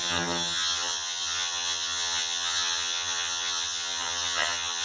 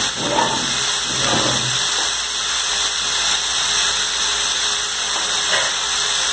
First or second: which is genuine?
second